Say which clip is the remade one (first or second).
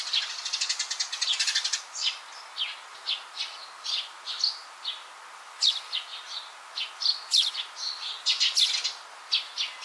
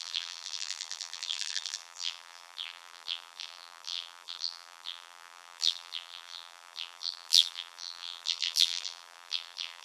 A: second